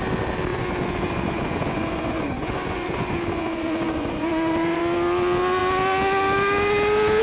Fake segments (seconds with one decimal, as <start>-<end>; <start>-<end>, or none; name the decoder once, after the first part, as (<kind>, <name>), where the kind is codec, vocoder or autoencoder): 0.5-4.8 (vocoder, Vocos)